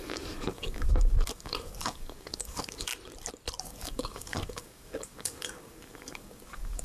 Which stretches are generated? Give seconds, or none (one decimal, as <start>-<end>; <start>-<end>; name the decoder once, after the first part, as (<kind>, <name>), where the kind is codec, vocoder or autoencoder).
0.0-2.9 (codec, DAC); 3.6-6.8